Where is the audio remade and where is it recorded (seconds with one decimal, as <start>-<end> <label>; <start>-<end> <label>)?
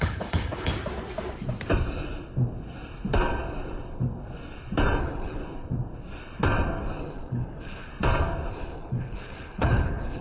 0.0-0.7 remade; 0.7-5.0 recorded; 5.0-5.4 remade; 5.4-7.0 recorded; 7.0-7.9 remade; 7.9-8.5 recorded; 8.5-10.2 remade